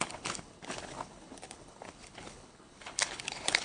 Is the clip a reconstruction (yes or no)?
yes